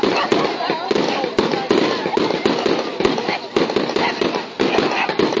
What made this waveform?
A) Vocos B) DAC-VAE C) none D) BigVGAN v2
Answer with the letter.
C